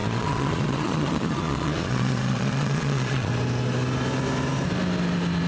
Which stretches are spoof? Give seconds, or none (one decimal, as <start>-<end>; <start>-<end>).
0.0-3.3